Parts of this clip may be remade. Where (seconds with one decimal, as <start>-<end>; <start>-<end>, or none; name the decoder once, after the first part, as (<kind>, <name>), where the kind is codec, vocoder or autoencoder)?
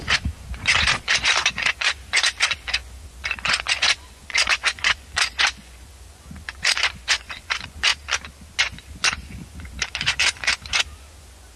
0.0-7.9 (vocoder, Vocos); 8.6-11.6